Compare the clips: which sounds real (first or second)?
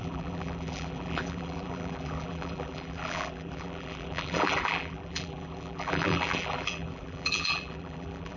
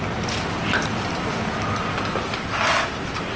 second